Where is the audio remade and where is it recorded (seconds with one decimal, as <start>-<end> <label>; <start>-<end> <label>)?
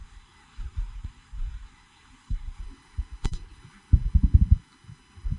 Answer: 0.0-2.6 remade; 2.6-5.4 recorded